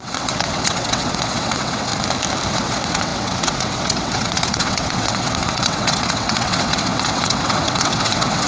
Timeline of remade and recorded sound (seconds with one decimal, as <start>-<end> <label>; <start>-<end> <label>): 0.0-1.9 remade; 1.9-2.5 recorded; 2.5-8.5 remade